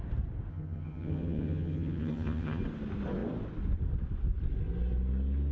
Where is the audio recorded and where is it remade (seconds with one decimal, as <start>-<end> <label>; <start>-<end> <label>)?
0.0-0.5 recorded; 0.5-2.6 remade; 2.6-5.5 recorded